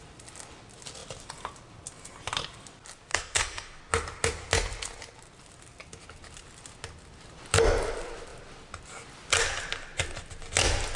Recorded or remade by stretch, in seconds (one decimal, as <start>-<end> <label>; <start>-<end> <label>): 0.0-3.1 recorded; 3.1-3.8 remade; 3.8-11.0 recorded